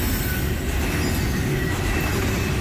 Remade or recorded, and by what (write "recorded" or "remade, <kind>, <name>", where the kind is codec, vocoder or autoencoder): recorded